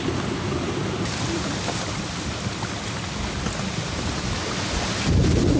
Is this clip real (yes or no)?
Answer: yes